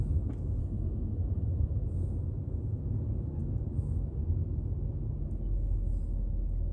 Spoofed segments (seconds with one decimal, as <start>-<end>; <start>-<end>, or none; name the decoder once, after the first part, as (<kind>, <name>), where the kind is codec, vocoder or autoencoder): 0.6-1.8 (codec, SNAC)